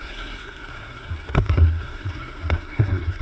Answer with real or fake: fake